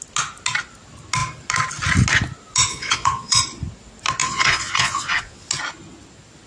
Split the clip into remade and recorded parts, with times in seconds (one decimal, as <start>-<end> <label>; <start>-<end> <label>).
0.0-2.7 recorded; 2.7-3.4 remade; 3.4-4.2 recorded; 4.2-5.5 remade; 5.5-6.5 recorded